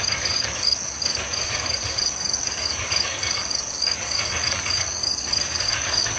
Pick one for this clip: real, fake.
fake